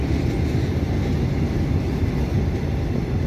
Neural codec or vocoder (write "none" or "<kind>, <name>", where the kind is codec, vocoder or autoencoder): none